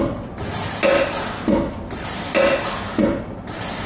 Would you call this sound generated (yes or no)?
no